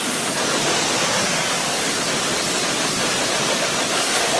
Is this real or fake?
real